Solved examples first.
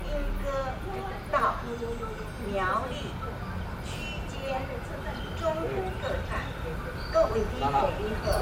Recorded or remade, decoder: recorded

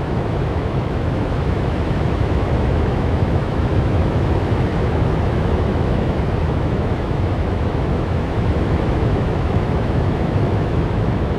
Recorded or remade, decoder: remade, autoencoder, DAC-VAE